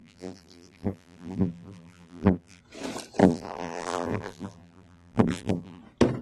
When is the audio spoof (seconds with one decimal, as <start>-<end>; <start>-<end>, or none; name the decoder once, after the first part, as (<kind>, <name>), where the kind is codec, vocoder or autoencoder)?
0.0-2.6 (vocoder, BigVGAN v2); 3.2-5.8